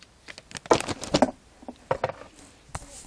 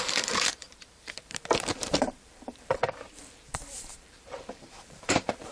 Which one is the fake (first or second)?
second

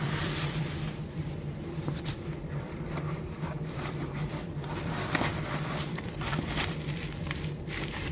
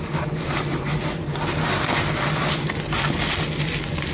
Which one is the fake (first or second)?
first